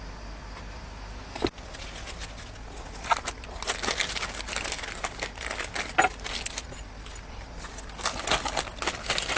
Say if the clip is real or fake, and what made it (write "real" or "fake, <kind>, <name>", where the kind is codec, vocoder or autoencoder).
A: real